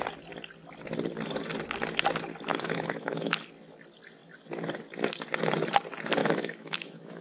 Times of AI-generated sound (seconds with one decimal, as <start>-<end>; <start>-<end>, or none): 2.5-3.4; 6.2-7.2